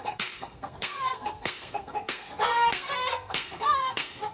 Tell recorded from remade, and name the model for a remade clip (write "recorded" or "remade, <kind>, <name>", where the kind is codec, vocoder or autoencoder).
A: remade, codec, SNAC